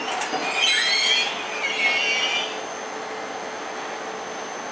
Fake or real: real